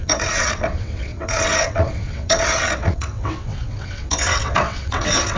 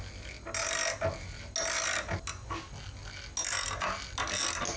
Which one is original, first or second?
second